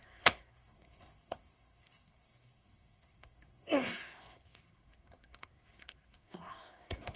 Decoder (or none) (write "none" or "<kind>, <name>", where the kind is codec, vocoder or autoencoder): codec, SNAC